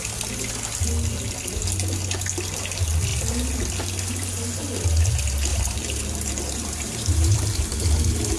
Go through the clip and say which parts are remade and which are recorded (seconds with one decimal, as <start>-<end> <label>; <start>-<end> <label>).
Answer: 0.0-5.5 recorded; 5.5-7.9 remade; 7.9-8.4 recorded